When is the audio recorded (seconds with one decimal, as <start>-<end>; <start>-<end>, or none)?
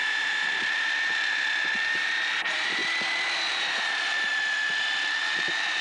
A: 2.8-3.5